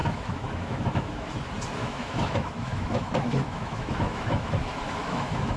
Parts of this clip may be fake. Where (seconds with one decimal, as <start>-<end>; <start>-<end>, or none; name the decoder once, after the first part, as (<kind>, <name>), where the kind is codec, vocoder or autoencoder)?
0.0-1.3 (autoencoder, DAC-VAE); 1.8-5.6